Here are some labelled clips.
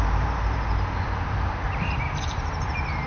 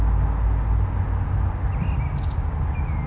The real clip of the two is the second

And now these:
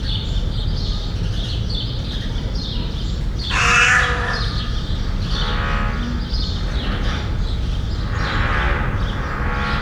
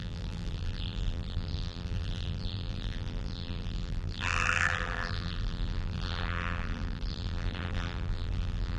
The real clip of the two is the first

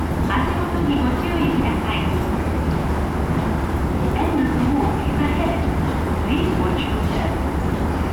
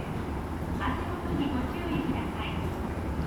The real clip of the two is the first